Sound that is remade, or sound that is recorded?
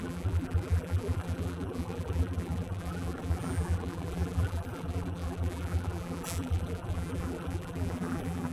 remade